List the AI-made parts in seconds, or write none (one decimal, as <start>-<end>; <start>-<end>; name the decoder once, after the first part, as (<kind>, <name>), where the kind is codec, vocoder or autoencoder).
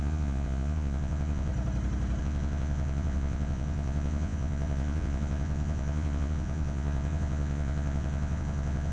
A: 0.0-1.5 (vocoder, Vocos); 2.2-8.9